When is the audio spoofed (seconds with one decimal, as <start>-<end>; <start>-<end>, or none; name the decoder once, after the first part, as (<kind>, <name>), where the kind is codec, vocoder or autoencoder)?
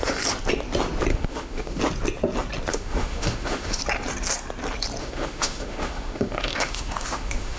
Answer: 1.1-1.8 (autoencoder, DAC-VAE); 2.7-3.8; 5.0-7.6